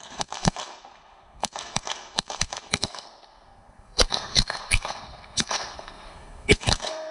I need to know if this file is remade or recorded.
remade